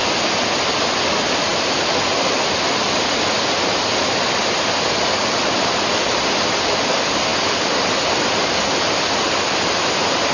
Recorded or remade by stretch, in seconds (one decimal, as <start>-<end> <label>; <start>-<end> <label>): 0.0-10.3 recorded